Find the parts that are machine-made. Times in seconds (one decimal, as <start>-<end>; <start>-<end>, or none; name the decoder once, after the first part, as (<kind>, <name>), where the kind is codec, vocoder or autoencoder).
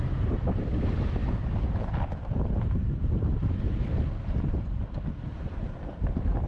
none